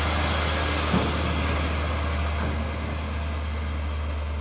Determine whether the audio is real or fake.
real